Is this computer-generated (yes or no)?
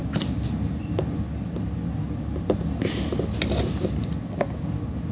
no